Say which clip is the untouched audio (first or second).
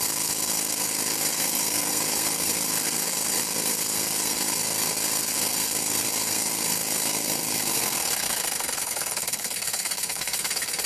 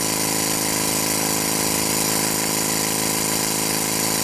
second